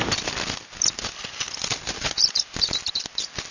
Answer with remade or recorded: recorded